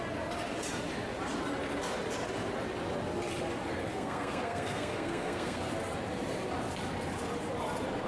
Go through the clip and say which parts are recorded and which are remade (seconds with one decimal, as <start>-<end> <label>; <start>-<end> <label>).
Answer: 0.0-3.9 recorded; 3.9-5.6 remade; 5.6-8.1 recorded